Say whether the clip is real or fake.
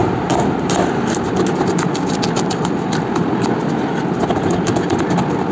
real